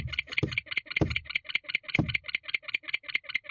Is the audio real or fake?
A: fake